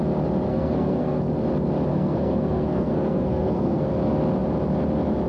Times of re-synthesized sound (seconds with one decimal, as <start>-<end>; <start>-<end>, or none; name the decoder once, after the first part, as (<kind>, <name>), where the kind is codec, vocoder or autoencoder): 0.5-1.2 (codec, SNAC); 1.9-3.9